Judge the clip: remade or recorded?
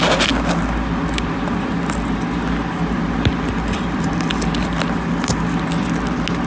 recorded